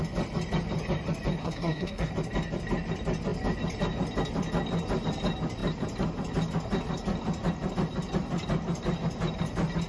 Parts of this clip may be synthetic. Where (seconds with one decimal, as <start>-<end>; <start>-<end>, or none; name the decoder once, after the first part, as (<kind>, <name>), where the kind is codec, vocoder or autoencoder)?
1.4-2.1 (codec, SNAC)